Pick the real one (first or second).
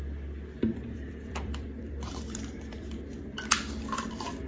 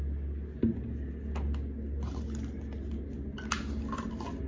second